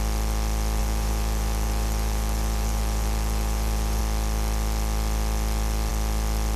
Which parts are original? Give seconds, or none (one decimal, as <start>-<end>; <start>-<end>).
0.0-0.8; 4.0-6.6